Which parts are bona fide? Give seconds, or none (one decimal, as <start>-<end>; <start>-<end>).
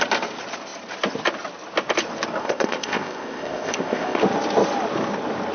0.0-2.4; 4.2-5.5